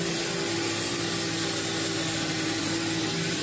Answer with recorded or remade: recorded